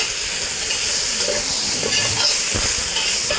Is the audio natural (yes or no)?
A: yes